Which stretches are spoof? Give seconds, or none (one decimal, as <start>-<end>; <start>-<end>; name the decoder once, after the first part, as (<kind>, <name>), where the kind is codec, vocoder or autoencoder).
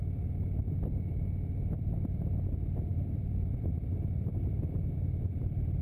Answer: 2.9-5.8 (vocoder, BigVGAN v2)